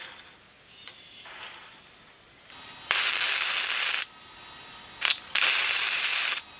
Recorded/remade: recorded